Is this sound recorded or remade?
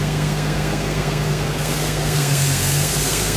remade